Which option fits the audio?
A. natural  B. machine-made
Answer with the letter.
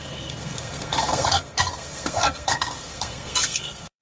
B